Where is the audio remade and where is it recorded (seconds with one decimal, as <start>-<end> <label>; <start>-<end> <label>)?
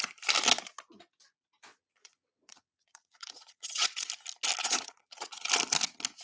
0.0-1.7 recorded; 1.7-4.0 remade; 4.0-4.6 recorded; 4.6-5.5 remade; 5.5-6.2 recorded